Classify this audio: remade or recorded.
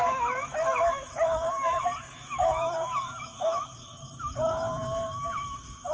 remade